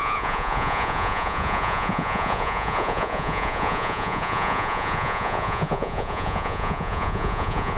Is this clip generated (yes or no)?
yes